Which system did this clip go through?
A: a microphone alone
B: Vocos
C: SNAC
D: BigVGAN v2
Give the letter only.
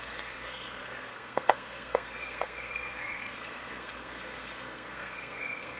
C